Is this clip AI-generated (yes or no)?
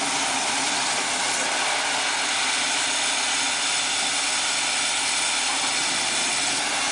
no